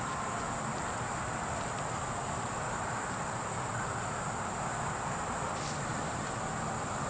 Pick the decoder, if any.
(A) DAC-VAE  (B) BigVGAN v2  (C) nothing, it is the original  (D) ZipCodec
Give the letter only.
C